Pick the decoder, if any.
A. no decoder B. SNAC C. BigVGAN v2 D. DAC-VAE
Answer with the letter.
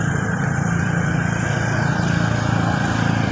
A